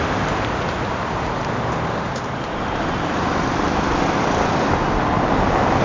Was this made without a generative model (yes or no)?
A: yes